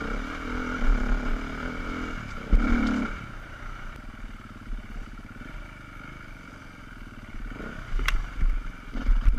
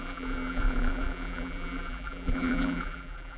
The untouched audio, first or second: first